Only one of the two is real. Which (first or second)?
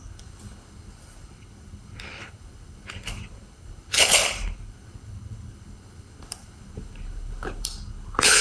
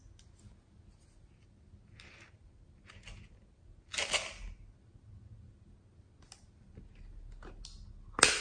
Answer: second